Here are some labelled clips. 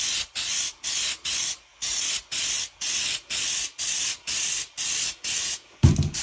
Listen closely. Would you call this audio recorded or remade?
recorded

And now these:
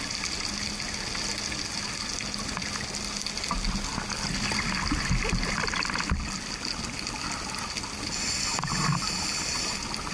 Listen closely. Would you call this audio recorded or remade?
recorded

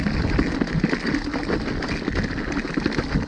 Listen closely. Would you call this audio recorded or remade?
recorded